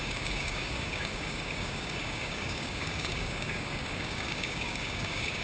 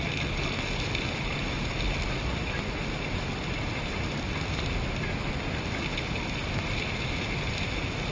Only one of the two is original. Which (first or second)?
second